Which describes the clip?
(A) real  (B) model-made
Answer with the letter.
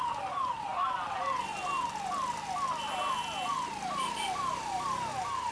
A